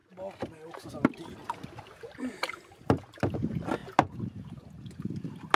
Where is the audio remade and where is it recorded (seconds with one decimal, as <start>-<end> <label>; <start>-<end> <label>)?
0.0-5.6 recorded